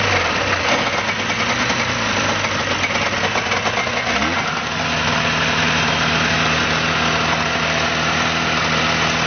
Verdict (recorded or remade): recorded